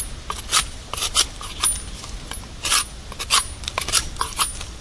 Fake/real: real